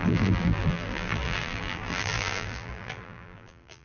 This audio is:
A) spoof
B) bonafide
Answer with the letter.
A